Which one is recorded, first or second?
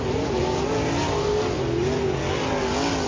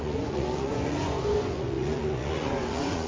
first